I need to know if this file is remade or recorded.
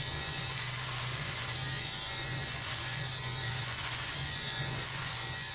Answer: remade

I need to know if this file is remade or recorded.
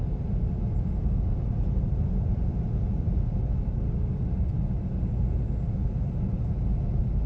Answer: recorded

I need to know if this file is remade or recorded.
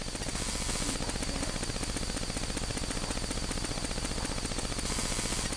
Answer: recorded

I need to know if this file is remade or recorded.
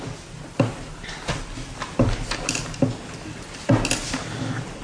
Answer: recorded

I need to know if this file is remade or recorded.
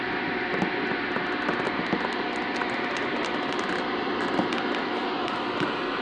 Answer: recorded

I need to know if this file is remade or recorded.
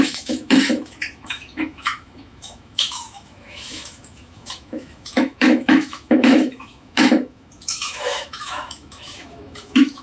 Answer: remade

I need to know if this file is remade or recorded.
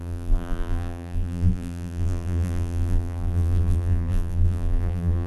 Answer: remade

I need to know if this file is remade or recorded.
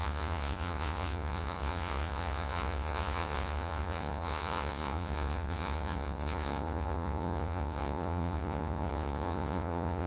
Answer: remade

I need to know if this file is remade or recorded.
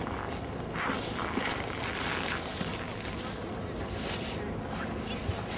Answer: recorded